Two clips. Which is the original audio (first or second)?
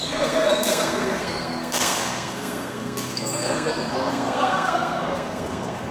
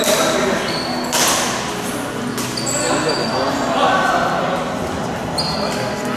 second